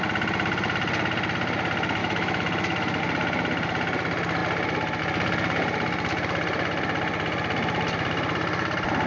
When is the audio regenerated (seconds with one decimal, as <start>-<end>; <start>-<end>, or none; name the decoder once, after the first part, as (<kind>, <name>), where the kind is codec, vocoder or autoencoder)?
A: 2.0-3.0 (autoencoder, DAC-VAE)